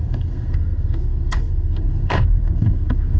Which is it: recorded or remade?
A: remade